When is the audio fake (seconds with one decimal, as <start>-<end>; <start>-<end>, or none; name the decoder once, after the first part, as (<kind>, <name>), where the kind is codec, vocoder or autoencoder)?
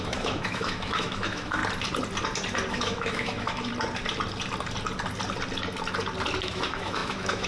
0.0-1.6 (autoencoder, DAC-VAE); 2.7-3.7; 6.4-7.5